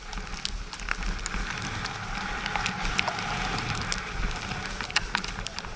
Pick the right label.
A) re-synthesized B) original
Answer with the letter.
B